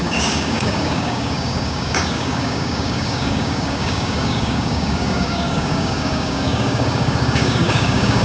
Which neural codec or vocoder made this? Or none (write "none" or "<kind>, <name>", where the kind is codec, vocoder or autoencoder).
codec, DAC